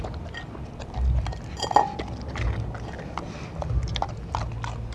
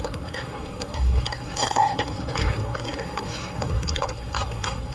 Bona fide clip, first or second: first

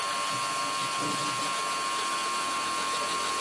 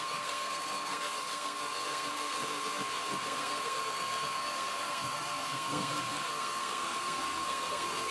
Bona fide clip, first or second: first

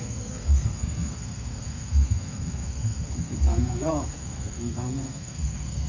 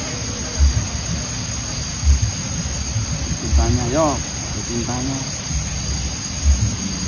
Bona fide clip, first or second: second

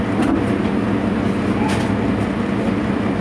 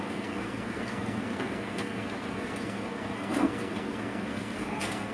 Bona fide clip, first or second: first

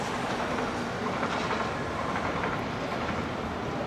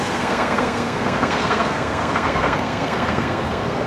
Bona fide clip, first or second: first